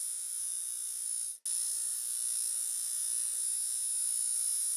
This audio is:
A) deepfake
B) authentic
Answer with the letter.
B